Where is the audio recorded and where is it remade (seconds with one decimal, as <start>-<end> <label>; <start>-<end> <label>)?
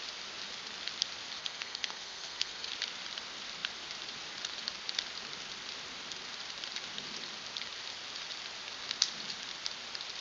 0.0-1.4 recorded; 1.4-2.7 remade; 2.7-10.2 recorded